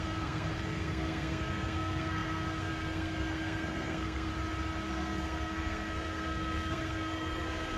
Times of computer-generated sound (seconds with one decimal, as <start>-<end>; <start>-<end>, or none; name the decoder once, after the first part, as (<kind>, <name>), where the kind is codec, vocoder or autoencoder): 0.0-4.3 (codec, SNAC); 4.9-7.8